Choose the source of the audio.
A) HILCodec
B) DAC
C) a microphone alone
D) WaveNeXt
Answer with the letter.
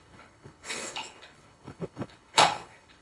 A